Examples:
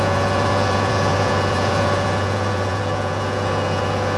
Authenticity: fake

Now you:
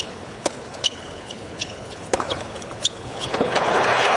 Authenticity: fake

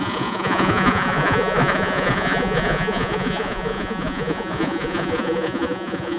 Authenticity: fake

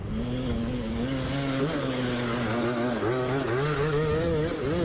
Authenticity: fake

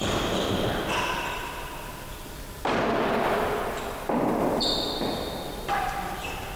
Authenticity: real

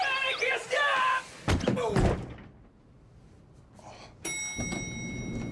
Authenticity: real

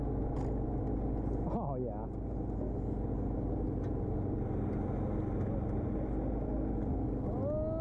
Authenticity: real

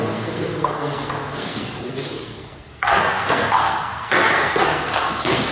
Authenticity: fake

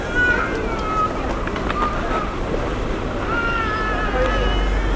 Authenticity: real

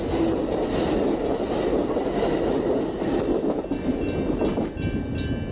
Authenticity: real